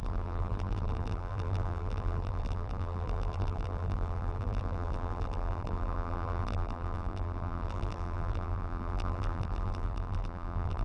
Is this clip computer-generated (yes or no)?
yes